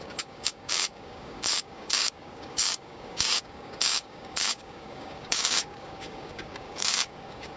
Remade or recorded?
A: remade